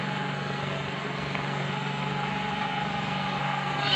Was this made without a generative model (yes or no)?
no